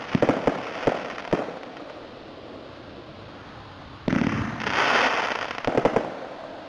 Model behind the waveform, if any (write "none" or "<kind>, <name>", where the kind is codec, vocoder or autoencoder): none